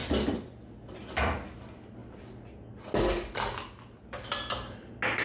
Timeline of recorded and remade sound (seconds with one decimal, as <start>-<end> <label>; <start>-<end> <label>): 0.0-5.2 recorded